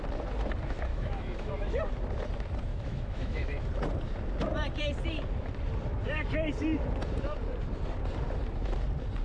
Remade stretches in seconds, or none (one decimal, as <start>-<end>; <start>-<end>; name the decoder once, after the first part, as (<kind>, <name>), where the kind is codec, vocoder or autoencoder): 0.9-1.8 (autoencoder, DAC-VAE); 2.7-3.7